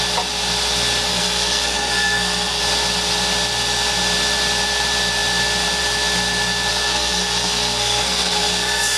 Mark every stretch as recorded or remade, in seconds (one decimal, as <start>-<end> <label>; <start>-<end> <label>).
0.0-1.1 recorded; 1.1-2.6 remade; 2.6-6.7 recorded; 6.7-9.0 remade